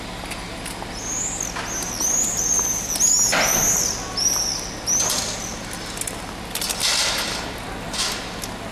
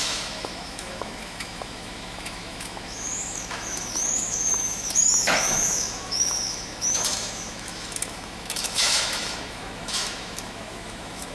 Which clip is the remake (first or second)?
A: second